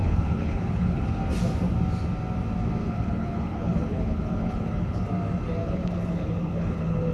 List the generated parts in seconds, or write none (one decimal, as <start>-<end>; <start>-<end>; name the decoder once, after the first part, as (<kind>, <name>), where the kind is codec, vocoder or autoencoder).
0.0-1.2 (codec, HILCodec); 2.8-5.0; 5.6-7.1